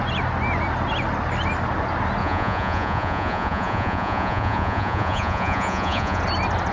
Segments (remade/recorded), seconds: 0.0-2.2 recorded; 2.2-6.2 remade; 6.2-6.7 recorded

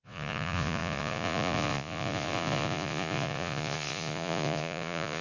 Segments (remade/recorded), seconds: 0.0-5.2 remade

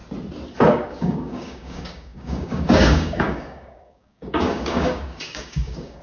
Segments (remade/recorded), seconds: 0.0-0.7 recorded; 0.7-6.0 remade

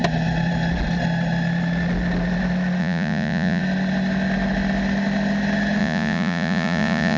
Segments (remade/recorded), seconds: 0.0-2.8 recorded; 2.8-3.6 remade; 3.6-5.8 recorded; 5.8-7.2 remade

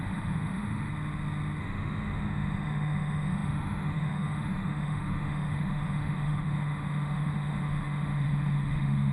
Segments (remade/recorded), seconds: 0.0-0.9 remade; 0.9-1.6 recorded; 1.6-9.1 remade

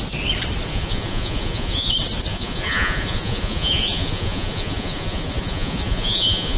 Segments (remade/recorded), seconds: 0.0-0.7 recorded; 0.7-1.9 remade; 1.9-2.3 recorded; 2.3-6.6 remade